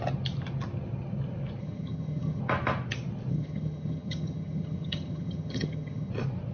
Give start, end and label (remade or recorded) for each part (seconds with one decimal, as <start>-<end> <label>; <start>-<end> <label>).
0.0-1.6 recorded; 1.6-2.4 remade; 2.4-3.3 recorded; 3.3-6.1 remade; 6.1-6.5 recorded